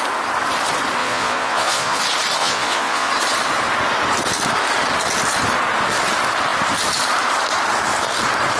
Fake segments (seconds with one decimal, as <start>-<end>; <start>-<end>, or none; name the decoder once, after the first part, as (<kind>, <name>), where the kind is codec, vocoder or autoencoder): 1.0-2.0 (vocoder, Vocos); 2.4-3.1

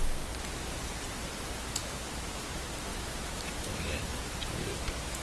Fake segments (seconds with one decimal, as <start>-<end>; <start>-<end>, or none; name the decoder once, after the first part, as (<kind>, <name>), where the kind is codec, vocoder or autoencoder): 1.8-2.4 (autoencoder, DAC-VAE); 2.9-4.1

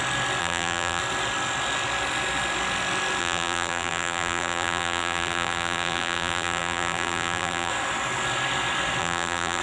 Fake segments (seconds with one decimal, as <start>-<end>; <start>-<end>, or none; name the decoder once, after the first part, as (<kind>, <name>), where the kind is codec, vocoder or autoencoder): 0.4-1.0 (vocoder, BigVGAN v2); 3.2-7.7; 9.0-9.6

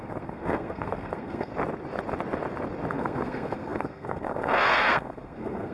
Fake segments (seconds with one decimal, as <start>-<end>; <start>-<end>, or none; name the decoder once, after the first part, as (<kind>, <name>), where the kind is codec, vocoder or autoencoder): 0.0-1.5 (codec, SNAC); 2.9-5.7

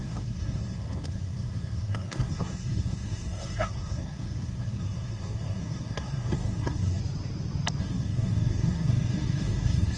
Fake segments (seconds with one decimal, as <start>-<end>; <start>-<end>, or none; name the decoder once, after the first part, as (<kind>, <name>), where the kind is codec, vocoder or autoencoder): 0.0-7.0 (codec, SNAC); 7.8-10.0